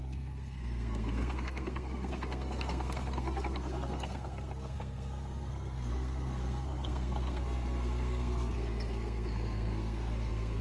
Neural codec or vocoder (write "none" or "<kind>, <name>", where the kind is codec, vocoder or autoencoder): codec, SNAC